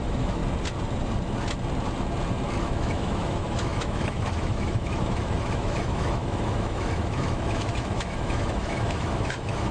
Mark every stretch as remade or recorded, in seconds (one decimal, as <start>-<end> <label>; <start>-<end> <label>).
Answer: 0.0-0.4 remade; 0.4-2.6 recorded; 2.6-9.7 remade